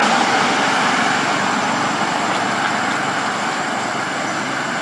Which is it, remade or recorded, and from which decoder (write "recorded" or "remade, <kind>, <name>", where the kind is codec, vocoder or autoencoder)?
recorded